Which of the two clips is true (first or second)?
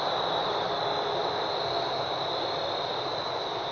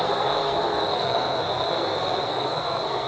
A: first